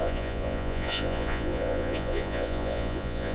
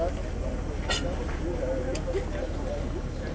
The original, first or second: second